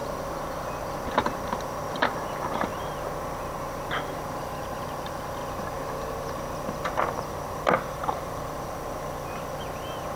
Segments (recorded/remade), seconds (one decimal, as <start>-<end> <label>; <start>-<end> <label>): 0.0-2.7 remade; 2.7-4.8 recorded; 4.8-5.4 remade; 5.4-7.9 recorded; 7.9-10.2 remade